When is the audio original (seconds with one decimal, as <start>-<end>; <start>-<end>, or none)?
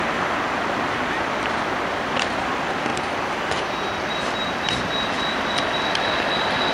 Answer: 0.0-6.7